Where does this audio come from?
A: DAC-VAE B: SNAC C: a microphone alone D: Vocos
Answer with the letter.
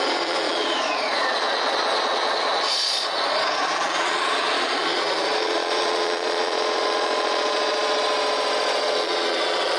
D